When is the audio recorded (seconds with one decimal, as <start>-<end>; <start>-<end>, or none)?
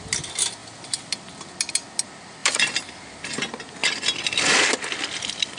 0.0-0.6; 1.4-2.4; 3.4-3.8